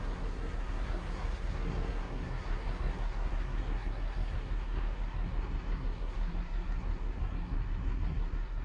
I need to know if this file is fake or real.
fake